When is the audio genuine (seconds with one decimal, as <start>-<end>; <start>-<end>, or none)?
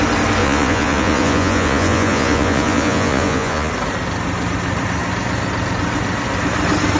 0.0-0.4; 3.7-7.0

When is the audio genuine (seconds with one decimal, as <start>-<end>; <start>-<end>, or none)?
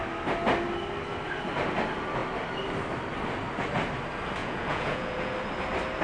0.0-4.4; 5.3-6.0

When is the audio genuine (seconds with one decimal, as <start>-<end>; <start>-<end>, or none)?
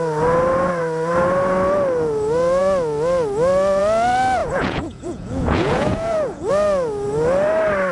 0.0-4.4; 6.5-7.9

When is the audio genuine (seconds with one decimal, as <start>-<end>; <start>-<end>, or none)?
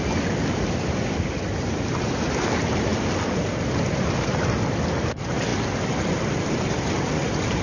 0.0-7.6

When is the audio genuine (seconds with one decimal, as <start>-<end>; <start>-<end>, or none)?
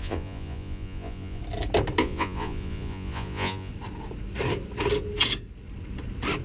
1.4-2.0; 3.7-6.4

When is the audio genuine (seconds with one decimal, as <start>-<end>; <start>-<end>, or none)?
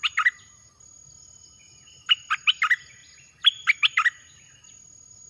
0.0-5.3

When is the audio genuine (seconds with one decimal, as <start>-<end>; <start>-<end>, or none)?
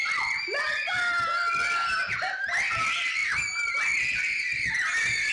0.0-5.3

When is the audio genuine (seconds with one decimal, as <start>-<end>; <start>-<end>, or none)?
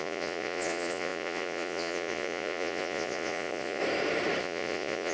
3.8-4.4